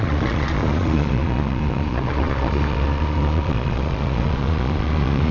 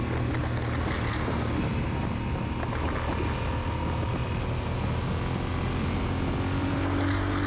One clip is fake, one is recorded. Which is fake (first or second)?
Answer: first